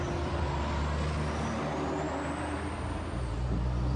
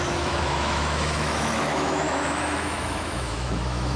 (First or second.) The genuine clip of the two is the first